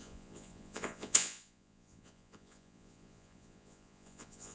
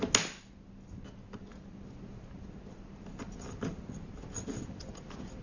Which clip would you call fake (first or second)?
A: first